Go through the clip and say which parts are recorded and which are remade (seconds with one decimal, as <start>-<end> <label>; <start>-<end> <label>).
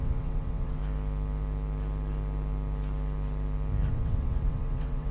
0.0-0.8 remade; 0.8-3.9 recorded; 3.9-5.1 remade